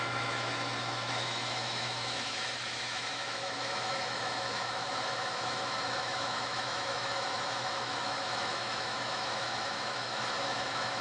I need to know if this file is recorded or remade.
remade